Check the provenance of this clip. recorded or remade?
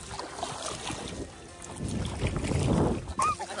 recorded